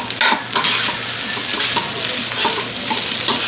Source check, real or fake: real